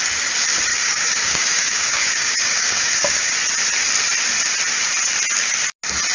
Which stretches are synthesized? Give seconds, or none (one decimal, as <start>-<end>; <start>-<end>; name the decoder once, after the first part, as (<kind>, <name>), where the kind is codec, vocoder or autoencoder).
0.7-3.3 (codec, DAC)